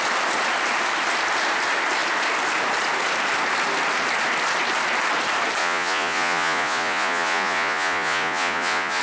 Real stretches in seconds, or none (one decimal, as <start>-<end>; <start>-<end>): 0.0-5.6